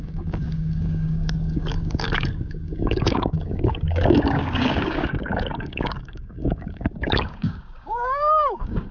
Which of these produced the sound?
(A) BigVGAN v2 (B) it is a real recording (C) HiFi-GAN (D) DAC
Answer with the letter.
D